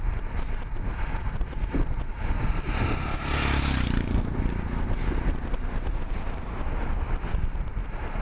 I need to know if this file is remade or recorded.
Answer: recorded